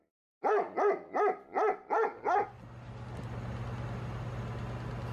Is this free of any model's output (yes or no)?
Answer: yes